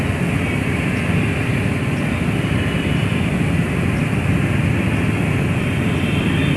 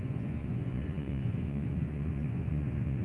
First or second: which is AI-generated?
second